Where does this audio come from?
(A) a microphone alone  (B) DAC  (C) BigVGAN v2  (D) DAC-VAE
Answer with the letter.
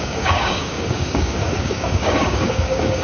B